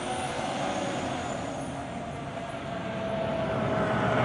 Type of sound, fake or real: real